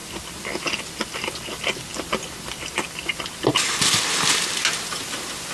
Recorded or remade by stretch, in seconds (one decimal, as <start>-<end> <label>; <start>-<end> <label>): 0.0-5.5 recorded